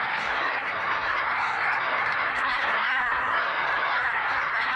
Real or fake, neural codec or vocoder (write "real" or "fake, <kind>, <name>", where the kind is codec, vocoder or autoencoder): fake, codec, SNAC